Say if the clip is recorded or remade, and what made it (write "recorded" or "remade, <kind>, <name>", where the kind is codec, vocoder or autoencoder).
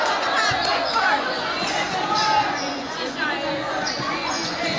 remade, vocoder, Vocos